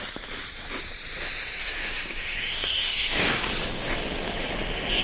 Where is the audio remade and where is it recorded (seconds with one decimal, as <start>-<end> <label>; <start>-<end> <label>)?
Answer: 0.0-1.6 recorded; 1.6-3.5 remade; 3.5-5.0 recorded

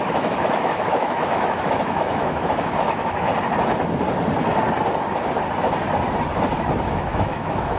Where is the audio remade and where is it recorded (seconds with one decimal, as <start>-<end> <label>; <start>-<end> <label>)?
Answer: 0.0-3.3 remade; 3.3-6.7 recorded; 6.7-7.8 remade